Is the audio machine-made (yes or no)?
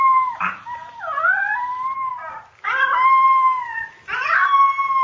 no